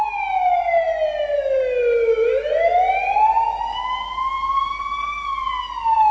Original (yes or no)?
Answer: yes